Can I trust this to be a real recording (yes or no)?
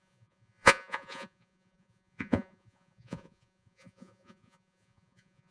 no